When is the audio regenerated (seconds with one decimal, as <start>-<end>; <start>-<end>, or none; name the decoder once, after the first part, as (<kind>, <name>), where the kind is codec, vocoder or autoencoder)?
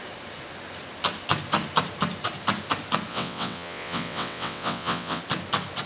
3.1-5.2 (vocoder, WaveNeXt)